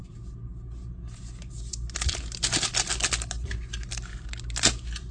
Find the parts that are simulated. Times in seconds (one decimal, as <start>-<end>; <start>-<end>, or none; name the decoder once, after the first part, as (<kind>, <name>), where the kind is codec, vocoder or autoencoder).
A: none